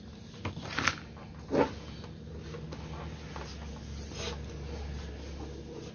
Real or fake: real